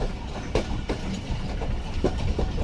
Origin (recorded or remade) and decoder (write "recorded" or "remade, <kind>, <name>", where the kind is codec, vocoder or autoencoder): recorded